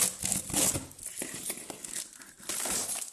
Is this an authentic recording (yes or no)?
yes